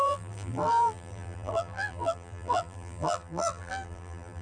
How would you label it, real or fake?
fake